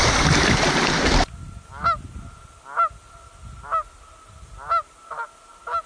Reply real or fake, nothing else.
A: real